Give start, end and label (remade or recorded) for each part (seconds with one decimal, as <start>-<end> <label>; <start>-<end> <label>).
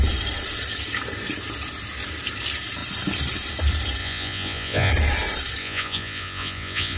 0.0-4.0 recorded; 4.0-4.9 remade; 4.9-5.6 recorded; 5.6-7.0 remade